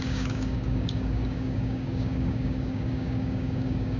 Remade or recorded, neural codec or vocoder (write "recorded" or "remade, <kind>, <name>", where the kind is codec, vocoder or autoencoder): remade, codec, DAC